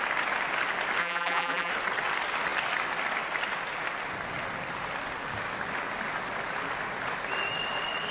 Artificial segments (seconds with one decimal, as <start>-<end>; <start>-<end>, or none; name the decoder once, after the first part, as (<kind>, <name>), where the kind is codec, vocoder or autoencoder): 1.0-1.7 (vocoder, BigVGAN v2)